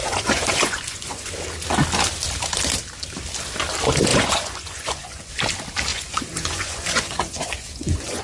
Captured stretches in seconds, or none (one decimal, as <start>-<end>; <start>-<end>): 1.3-4.1; 5.3-5.9